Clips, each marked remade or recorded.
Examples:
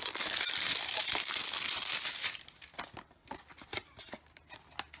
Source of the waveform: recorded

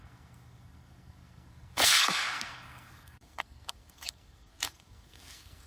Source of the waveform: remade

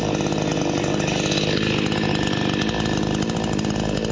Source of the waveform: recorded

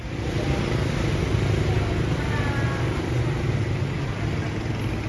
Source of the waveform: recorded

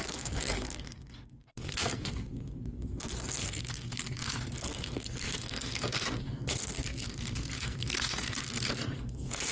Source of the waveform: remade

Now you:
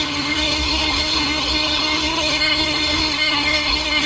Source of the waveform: remade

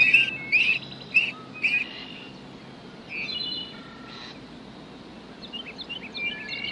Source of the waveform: recorded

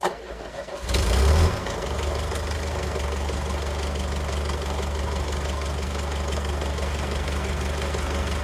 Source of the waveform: remade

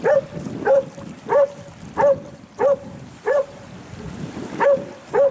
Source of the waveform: recorded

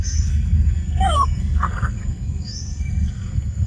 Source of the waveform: remade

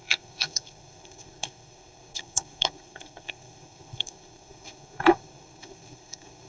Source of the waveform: remade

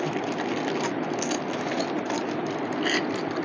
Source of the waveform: recorded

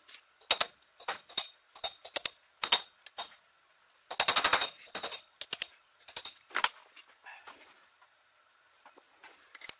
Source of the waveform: recorded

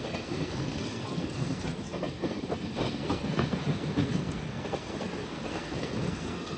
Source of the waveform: remade